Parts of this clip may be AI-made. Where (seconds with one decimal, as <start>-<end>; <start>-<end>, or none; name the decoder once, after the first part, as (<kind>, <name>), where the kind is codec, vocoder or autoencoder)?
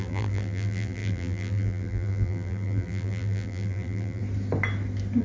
0.0-4.2 (vocoder, BigVGAN v2)